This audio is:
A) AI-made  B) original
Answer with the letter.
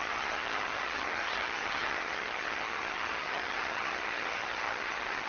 A